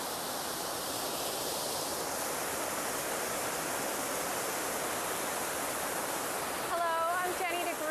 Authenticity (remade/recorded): recorded